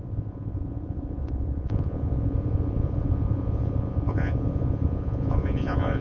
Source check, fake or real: fake